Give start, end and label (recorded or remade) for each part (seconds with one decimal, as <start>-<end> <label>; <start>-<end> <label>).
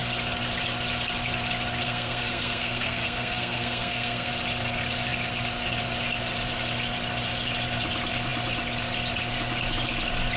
0.0-1.8 recorded; 1.8-4.3 remade; 4.3-10.4 recorded